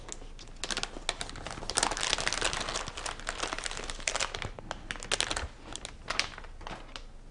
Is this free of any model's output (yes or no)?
yes